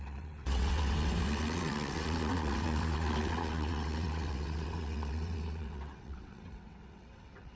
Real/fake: fake